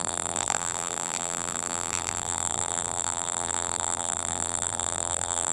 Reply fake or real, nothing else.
fake